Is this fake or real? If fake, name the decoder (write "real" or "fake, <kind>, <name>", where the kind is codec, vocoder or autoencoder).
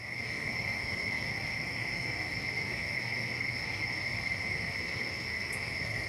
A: fake, codec, SNAC